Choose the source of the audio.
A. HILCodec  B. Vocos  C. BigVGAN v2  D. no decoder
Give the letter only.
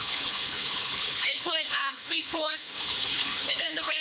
A